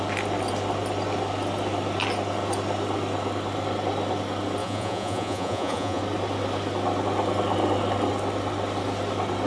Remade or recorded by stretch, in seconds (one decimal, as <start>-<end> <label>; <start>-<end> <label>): 0.0-4.6 recorded; 4.6-6.0 remade; 6.0-9.5 recorded